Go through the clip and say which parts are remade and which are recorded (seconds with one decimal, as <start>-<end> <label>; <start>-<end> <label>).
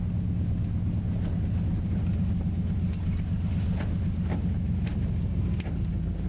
0.0-4.9 recorded; 4.9-5.7 remade; 5.7-6.3 recorded